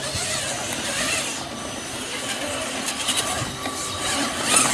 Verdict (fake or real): real